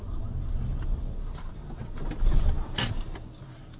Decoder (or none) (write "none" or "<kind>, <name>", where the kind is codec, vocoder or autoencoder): none